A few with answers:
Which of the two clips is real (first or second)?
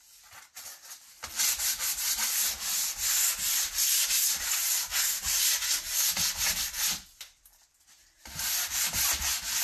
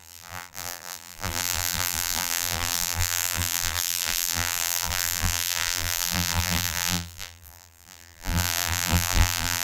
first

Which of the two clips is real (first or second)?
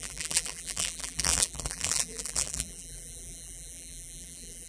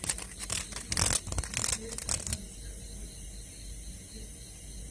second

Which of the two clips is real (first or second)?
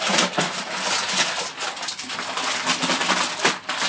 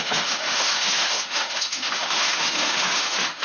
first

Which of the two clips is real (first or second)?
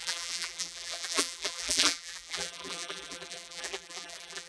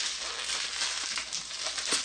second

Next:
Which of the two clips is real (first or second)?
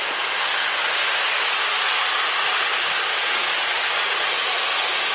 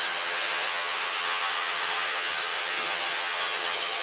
first